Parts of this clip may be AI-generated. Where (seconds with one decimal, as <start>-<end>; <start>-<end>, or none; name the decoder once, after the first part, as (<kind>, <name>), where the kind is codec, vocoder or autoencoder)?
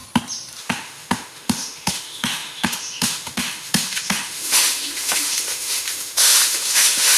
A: 0.6-7.2 (autoencoder, DAC-VAE)